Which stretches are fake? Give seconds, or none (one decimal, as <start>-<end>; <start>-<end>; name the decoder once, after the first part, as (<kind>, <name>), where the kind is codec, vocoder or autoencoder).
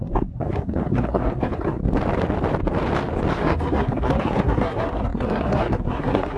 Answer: 0.0-1.8 (codec, SNAC); 3.3-6.4